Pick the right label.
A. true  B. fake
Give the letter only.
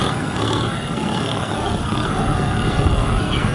B